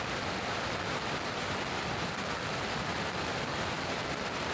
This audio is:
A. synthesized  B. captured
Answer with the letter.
B